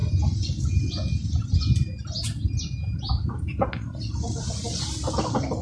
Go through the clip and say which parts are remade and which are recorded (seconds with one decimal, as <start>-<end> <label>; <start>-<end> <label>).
0.0-5.6 recorded